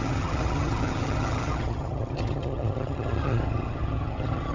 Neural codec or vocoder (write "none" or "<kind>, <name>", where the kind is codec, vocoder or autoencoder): vocoder, HiFi-GAN